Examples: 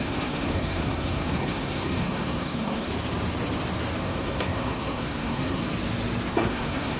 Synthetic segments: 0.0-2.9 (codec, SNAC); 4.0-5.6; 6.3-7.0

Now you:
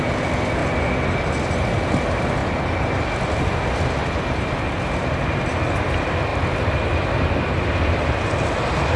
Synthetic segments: none